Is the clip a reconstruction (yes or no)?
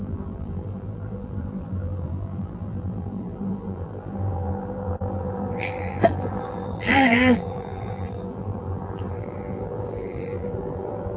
yes